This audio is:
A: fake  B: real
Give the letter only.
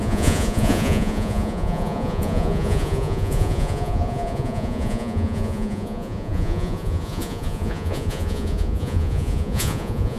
A